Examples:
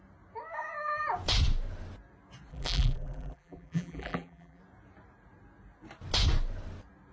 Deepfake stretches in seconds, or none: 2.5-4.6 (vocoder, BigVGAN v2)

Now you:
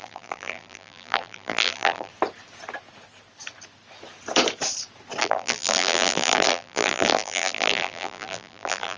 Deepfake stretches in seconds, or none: 0.0-2.1 (vocoder, BigVGAN v2); 5.2-9.0

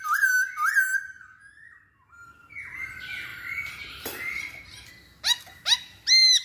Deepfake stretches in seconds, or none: 2.4-2.9 (vocoder, BigVGAN v2); 3.3-4.9

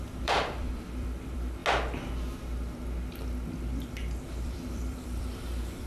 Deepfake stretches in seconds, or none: 0.0-1.6 (vocoder, BigVGAN v2); 4.2-5.9

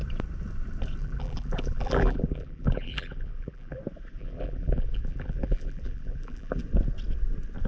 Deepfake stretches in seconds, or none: 1.0-3.8 (vocoder, BigVGAN v2); 4.2-6.6

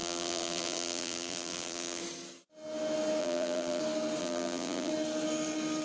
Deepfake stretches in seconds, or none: 0.0-2.0 (vocoder, BigVGAN v2); 3.2-3.8; 4.2-4.9